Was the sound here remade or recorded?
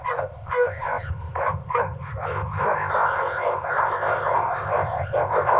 remade